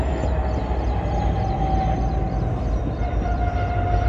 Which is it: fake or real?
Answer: real